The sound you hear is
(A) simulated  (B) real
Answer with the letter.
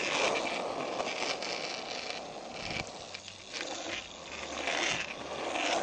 B